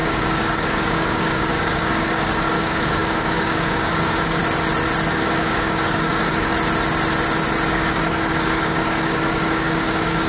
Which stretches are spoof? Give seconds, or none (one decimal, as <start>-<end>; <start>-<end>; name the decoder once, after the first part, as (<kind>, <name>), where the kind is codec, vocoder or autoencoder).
0.0-4.4 (codec, DAC); 5.1-6.5; 7.7-10.3